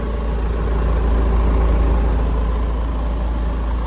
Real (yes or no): yes